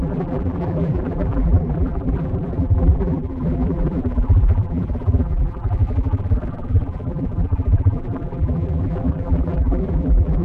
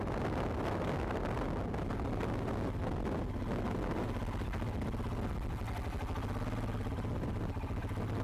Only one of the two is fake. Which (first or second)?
first